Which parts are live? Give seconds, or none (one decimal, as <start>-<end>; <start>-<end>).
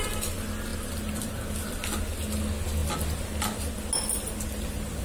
0.0-5.0